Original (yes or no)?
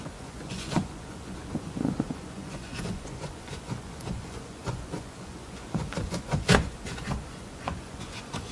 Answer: no